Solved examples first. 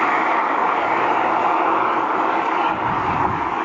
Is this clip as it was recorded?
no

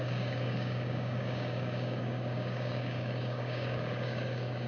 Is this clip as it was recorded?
no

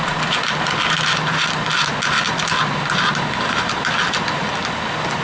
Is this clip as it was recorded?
yes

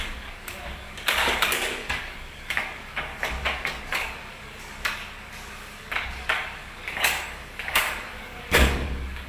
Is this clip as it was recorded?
no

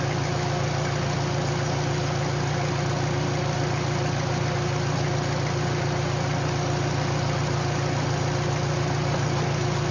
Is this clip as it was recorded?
yes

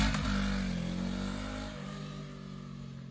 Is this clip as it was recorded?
yes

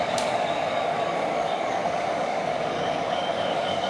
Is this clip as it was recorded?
no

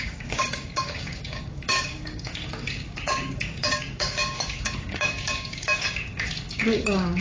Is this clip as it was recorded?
no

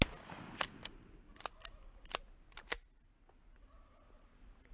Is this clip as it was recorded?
yes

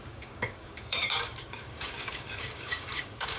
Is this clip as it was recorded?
no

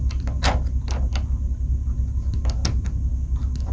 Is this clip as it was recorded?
yes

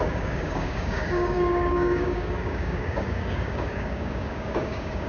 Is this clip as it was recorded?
no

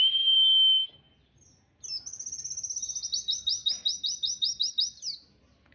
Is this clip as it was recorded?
yes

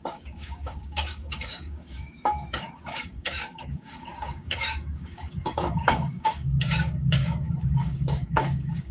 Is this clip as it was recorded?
no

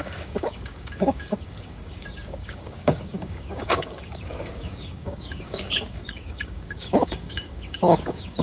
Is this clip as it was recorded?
no